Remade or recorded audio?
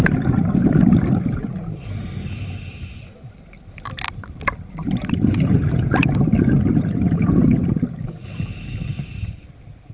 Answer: recorded